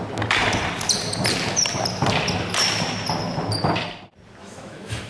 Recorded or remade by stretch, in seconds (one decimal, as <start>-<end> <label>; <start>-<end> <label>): 0.0-4.4 recorded; 4.4-5.1 remade